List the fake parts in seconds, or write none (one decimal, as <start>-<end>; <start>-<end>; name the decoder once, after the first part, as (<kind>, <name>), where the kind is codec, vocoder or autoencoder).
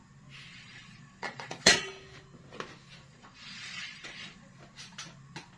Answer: 0.5-1.9 (vocoder, Vocos); 3.1-4.5